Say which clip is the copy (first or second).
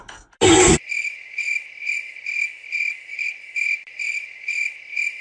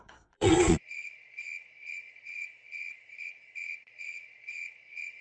second